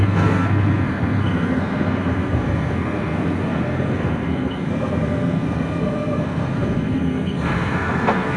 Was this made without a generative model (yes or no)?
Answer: no